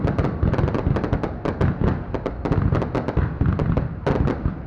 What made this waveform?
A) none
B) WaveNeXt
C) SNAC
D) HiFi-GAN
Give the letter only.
A